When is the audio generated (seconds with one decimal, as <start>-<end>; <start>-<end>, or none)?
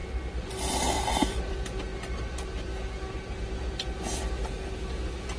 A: none